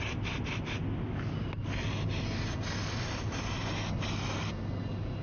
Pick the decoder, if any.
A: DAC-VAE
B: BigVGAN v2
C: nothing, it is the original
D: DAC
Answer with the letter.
C